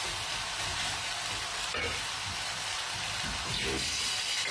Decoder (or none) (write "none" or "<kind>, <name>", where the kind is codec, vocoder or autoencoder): vocoder, BigVGAN v2